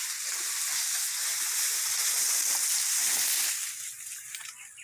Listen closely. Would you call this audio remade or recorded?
recorded